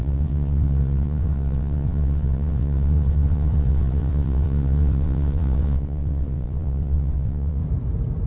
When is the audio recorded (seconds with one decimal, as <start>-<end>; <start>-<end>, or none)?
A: 7.6-8.3